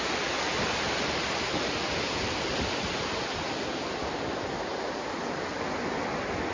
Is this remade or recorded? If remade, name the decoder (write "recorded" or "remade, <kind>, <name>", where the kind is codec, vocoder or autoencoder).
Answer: recorded